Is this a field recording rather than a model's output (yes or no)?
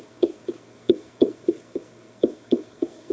no